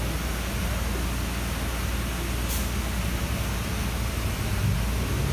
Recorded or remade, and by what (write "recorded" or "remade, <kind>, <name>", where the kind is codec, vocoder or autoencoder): recorded